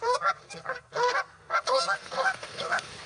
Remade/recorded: remade